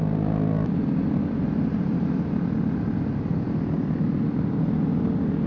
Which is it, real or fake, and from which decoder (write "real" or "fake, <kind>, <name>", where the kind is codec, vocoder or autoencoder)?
real